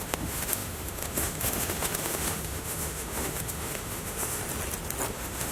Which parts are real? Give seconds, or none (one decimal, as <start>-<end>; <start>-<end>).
4.4-5.1